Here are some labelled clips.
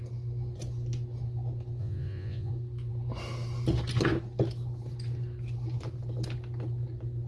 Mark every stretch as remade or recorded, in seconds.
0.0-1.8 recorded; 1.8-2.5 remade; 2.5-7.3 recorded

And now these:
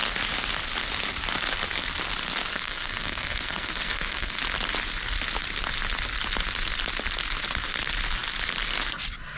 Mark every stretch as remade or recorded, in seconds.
0.0-2.5 recorded; 2.5-4.4 remade; 4.4-9.4 recorded

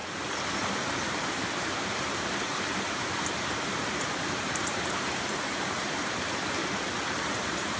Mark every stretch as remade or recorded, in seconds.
0.0-1.2 recorded; 1.2-6.6 remade; 6.6-7.2 recorded; 7.2-7.8 remade

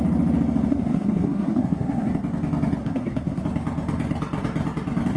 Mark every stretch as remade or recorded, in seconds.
0.0-0.7 recorded; 0.7-2.1 remade; 2.1-2.8 recorded; 2.8-3.4 remade; 3.4-5.2 recorded

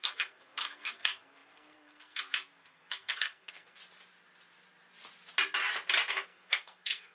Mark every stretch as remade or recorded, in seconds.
0.0-3.8 remade; 3.8-6.1 recorded; 6.1-7.1 remade

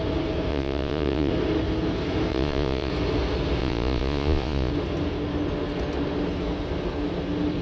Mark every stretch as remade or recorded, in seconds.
0.0-0.5 recorded; 0.5-1.3 remade; 1.3-2.3 recorded; 2.3-2.9 remade; 2.9-3.6 recorded; 3.6-4.7 remade; 4.7-7.6 recorded

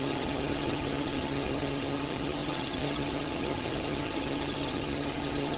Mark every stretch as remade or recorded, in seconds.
0.0-5.6 remade

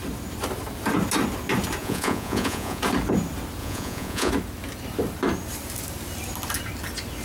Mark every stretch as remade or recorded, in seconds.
0.0-1.8 recorded; 1.8-2.8 remade; 2.8-3.6 recorded; 3.6-4.3 remade; 4.3-7.2 recorded